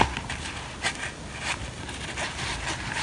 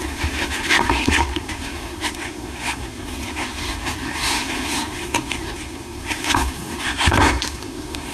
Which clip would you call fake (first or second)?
second